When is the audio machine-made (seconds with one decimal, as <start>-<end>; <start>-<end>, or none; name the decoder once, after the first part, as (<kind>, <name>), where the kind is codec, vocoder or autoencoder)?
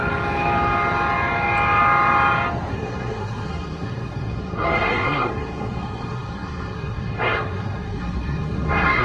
2.7-9.0 (codec, SNAC)